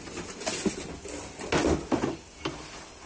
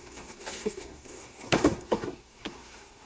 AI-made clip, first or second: second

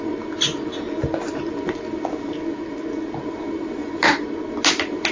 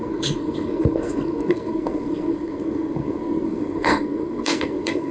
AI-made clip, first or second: second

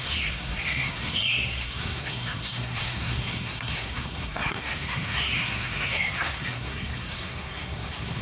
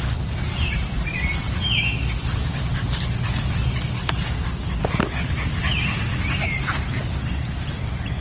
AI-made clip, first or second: first